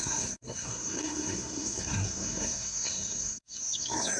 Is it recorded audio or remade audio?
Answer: remade